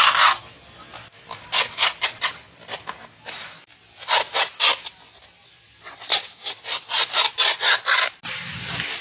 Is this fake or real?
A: real